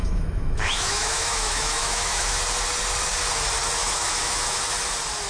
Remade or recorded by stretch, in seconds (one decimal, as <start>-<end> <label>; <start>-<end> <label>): 0.0-2.4 remade; 2.4-3.8 recorded; 3.8-4.6 remade; 4.6-5.3 recorded

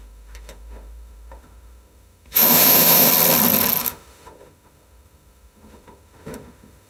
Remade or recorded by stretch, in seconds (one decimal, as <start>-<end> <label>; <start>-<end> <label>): 0.0-3.1 remade; 3.1-3.8 recorded; 3.8-6.9 remade

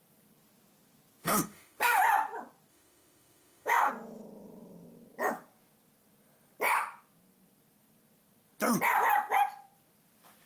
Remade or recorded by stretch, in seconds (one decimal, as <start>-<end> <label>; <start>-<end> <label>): 0.0-1.2 recorded; 1.2-2.0 remade; 2.0-2.7 recorded; 2.7-3.9 remade; 3.9-10.5 recorded